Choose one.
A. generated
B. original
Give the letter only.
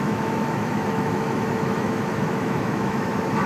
A